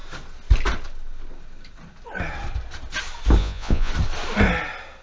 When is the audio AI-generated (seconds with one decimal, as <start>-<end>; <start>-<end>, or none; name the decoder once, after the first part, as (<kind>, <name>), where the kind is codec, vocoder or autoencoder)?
3.4-3.9 (vocoder, Vocos)